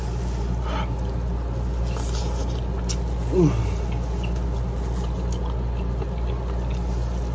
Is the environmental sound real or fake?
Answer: real